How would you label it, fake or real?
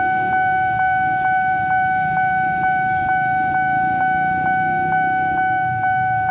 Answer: real